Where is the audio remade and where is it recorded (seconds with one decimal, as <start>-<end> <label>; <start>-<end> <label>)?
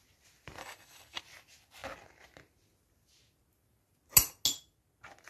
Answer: 0.0-0.6 recorded; 0.6-1.2 remade; 1.2-5.3 recorded